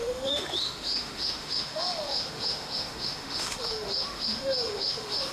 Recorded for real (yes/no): no